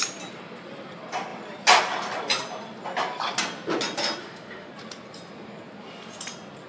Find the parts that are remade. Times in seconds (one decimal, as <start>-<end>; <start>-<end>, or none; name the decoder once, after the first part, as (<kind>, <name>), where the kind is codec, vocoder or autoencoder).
4.2-4.7 (autoencoder, DAC-VAE)